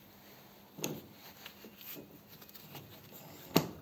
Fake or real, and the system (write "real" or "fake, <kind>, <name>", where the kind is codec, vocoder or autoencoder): real